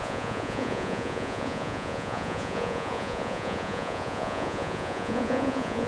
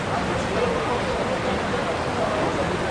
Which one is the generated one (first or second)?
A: first